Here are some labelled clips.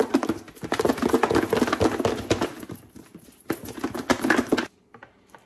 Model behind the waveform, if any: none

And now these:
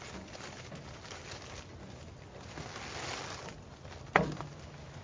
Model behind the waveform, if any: none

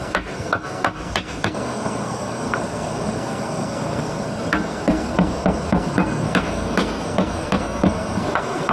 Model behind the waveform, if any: codec, SNAC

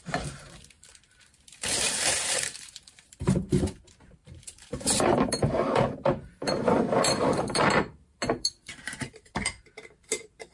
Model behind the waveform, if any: vocoder, BigVGAN v2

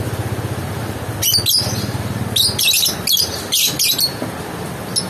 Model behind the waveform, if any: none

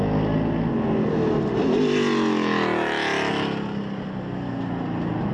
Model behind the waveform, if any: none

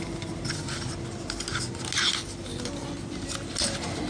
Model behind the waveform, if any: none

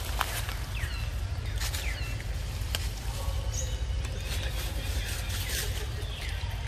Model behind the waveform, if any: none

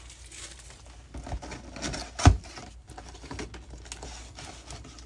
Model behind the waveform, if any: none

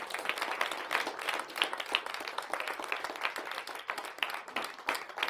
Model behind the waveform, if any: none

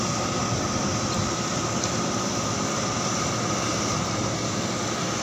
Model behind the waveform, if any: vocoder, BigVGAN v2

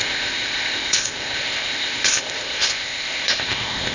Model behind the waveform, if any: codec, ZipCodec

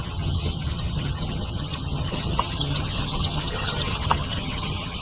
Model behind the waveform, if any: vocoder, HiFi-GAN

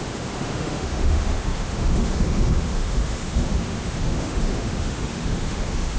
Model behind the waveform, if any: autoencoder, DAC-VAE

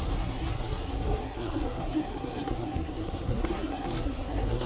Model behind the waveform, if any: codec, SNAC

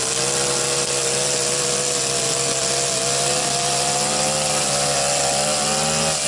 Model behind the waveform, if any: none